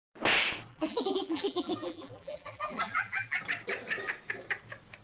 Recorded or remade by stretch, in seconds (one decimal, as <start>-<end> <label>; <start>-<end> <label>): 0.0-0.7 recorded; 0.7-3.4 remade; 3.4-5.0 recorded

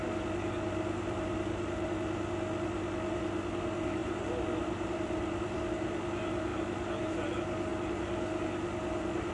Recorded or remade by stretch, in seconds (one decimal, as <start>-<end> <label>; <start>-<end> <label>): 0.0-4.0 recorded; 4.0-5.7 remade; 5.7-9.3 recorded

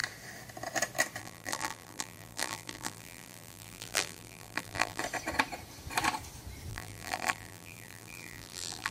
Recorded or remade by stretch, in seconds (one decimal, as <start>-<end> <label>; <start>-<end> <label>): 0.0-1.2 recorded; 1.2-5.0 remade; 5.0-6.7 recorded; 6.7-8.9 remade

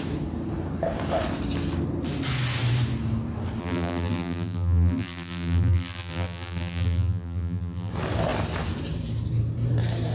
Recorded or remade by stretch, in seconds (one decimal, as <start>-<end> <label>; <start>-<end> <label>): 0.0-3.6 recorded; 3.6-7.9 remade; 7.9-10.1 recorded

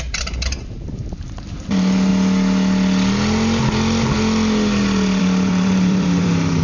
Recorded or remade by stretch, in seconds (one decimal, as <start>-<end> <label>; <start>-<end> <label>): 0.0-2.1 remade; 2.1-5.2 recorded; 5.2-6.6 remade

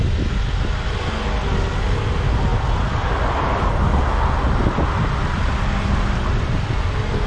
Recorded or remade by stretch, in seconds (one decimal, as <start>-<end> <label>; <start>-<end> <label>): 0.0-2.5 recorded; 2.5-3.0 remade; 3.0-7.3 recorded

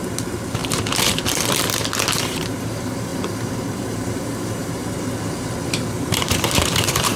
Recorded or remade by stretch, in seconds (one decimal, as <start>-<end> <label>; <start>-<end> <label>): 0.0-0.6 remade; 0.6-2.2 recorded; 2.2-4.8 remade; 4.8-5.9 recorded; 5.9-7.2 remade